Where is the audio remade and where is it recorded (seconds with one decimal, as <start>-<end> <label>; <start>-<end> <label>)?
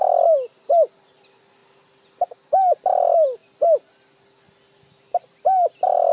0.0-6.1 recorded